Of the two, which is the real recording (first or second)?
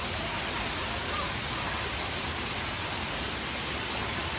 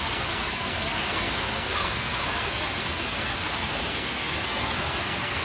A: first